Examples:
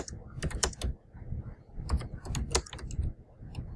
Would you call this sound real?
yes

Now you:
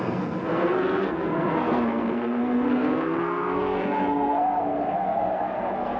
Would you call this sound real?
no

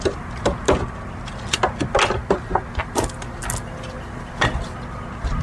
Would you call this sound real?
yes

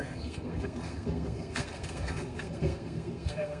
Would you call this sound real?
no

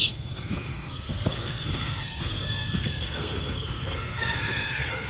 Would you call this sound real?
no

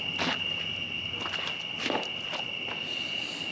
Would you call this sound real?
yes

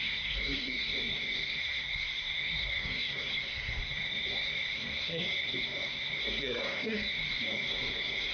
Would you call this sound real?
no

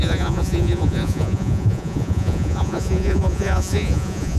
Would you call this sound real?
no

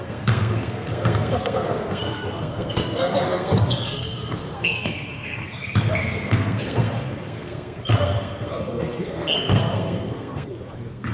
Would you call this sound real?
no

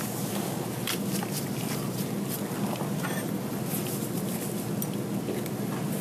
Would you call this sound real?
yes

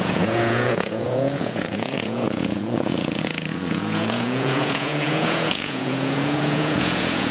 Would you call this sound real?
no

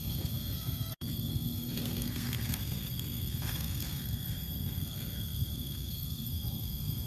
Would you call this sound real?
no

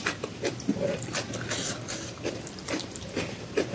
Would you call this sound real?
no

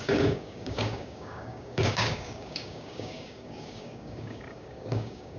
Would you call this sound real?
no